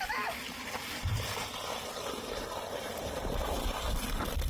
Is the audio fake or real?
fake